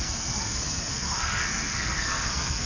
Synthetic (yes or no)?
yes